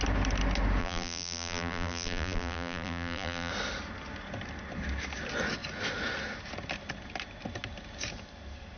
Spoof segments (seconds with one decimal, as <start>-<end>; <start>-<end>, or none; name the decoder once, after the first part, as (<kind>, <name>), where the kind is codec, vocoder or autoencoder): 0.8-3.5 (vocoder, BigVGAN v2)

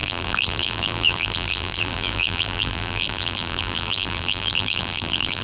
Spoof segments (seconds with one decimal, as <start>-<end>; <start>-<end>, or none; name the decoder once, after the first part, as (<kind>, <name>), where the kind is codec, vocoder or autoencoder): 0.0-5.4 (vocoder, BigVGAN v2)

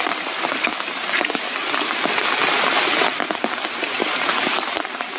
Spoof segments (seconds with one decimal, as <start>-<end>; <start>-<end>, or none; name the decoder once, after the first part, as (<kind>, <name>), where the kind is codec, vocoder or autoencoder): 0.0-0.7 (vocoder, BigVGAN v2); 3.8-5.2

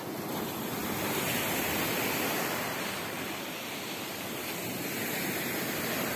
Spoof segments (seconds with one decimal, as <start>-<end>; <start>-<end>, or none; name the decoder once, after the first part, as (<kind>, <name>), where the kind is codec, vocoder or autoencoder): none

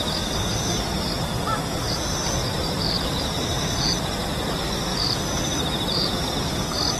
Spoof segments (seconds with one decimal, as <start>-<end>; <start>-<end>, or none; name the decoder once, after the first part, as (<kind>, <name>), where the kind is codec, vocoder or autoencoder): 2.4-4.1 (vocoder, BigVGAN v2); 4.9-6.5

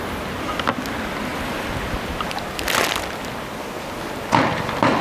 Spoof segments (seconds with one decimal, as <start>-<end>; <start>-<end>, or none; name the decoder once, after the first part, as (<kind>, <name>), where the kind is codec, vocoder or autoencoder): none

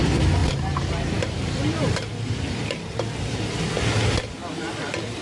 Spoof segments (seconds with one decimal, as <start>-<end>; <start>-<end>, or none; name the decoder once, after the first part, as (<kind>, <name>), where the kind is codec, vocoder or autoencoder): 0.4-3.4 (vocoder, BigVGAN v2)

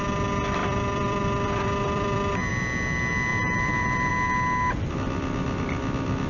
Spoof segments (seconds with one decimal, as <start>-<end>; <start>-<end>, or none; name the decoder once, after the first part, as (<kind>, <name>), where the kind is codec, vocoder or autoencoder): 0.6-2.5 (vocoder, BigVGAN v2); 3.3-4.1